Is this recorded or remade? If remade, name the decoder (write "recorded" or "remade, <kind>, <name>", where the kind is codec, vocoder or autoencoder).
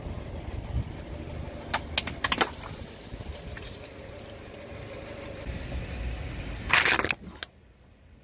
recorded